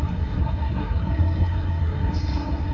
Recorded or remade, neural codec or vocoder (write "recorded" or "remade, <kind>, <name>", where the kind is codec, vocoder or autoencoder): remade, codec, SNAC